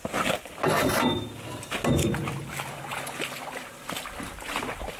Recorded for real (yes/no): yes